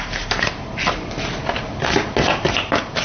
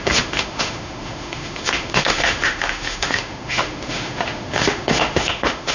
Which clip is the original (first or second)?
first